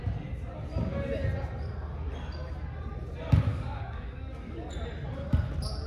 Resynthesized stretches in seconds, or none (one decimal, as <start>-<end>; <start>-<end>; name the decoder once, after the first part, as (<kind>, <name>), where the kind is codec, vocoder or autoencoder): 3.5-4.7 (codec, DAC)